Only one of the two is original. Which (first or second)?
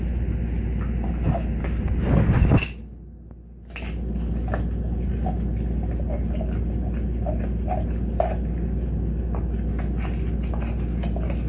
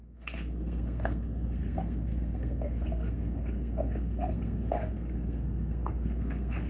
first